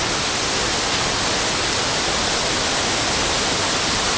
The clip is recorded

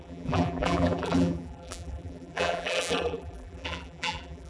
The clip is remade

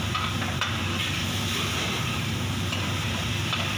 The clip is remade